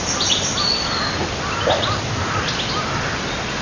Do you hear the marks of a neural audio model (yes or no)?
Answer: no